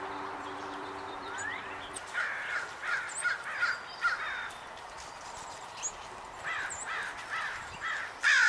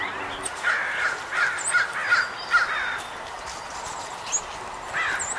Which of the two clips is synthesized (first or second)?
first